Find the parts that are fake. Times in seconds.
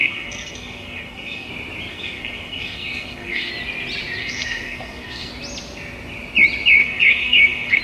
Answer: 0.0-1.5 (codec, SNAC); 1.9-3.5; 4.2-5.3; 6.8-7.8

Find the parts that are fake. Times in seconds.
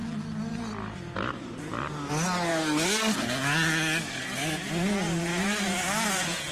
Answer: 2.5-4.7 (codec, DAC)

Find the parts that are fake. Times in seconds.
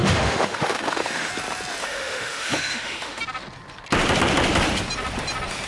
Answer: 0.0-1.3 (autoencoder, DAC-VAE); 1.8-3.2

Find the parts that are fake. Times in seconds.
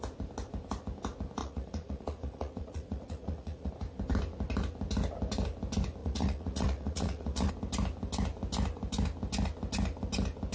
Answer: 1.4-3.7 (vocoder, Vocos); 6.0-7.5